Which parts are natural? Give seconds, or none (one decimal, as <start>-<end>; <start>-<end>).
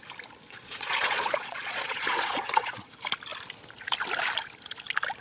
0.0-0.6; 2.9-5.2